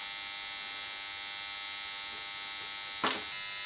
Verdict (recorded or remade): recorded